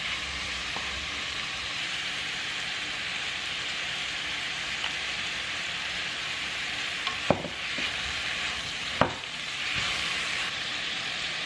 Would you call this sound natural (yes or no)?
no